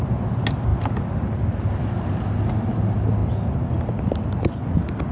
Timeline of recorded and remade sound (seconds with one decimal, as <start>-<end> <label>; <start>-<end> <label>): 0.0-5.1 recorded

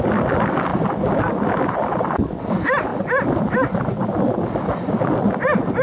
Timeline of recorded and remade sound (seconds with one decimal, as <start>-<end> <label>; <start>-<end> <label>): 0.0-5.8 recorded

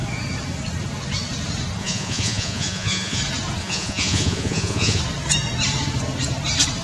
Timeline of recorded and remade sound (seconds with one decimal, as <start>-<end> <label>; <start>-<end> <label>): 0.0-1.8 recorded; 1.8-3.2 remade; 3.2-3.6 recorded; 3.6-5.0 remade; 5.0-6.8 recorded

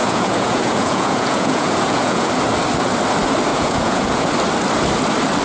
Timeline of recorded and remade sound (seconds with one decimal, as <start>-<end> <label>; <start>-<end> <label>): 0.0-2.3 remade; 2.3-3.5 recorded; 3.5-4.3 remade; 4.3-5.4 recorded